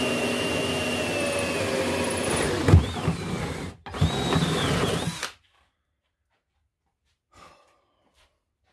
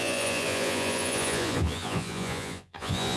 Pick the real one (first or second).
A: first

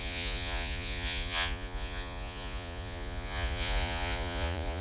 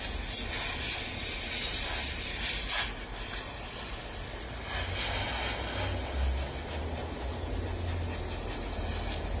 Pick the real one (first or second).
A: second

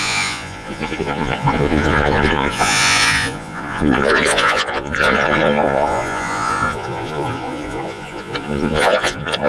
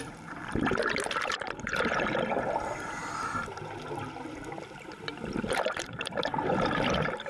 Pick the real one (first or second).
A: second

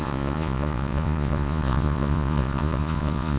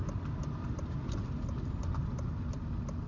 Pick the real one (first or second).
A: second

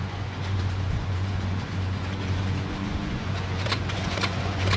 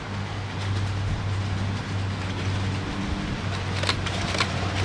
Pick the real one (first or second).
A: second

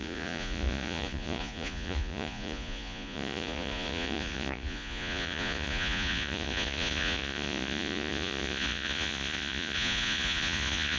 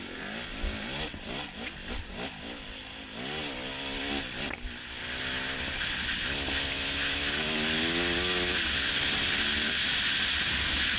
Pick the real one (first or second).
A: second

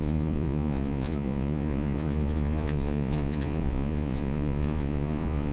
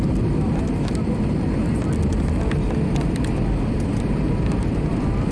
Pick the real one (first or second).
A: second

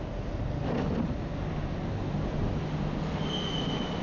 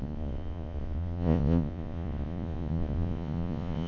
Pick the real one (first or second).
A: first